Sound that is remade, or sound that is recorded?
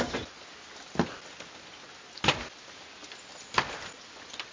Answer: recorded